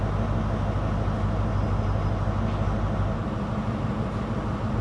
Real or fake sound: real